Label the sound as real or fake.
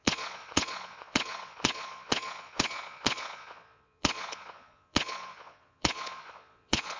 fake